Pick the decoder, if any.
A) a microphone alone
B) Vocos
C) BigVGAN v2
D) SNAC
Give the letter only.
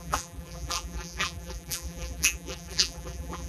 C